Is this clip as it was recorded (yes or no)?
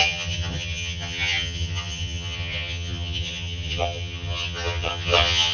no